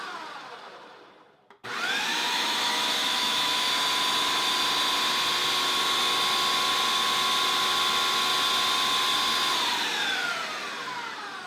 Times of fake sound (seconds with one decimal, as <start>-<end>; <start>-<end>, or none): 2.1-3.7